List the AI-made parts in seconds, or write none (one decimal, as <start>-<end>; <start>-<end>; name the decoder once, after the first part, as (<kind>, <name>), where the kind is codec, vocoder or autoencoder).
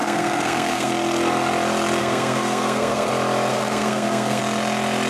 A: 0.0-0.9 (codec, SNAC); 2.0-3.1; 3.5-4.4